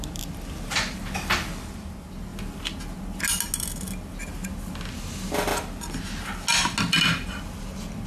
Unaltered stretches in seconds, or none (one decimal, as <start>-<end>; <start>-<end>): 0.0-8.1